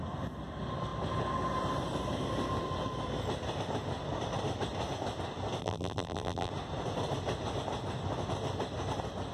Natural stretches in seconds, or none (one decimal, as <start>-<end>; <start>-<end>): 0.0-5.6; 6.5-9.3